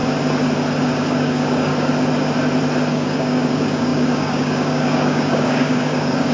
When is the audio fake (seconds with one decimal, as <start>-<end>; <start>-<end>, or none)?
0.8-1.7; 2.9-6.3